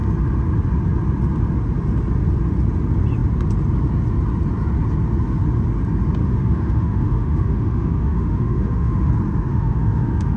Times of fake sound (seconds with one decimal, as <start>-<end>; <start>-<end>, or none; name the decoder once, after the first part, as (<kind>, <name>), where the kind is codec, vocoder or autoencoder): 6.2-9.1 (autoencoder, DAC-VAE); 9.5-10.4